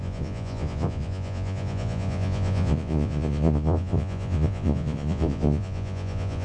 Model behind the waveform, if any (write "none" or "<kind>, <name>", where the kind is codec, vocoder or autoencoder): vocoder, Vocos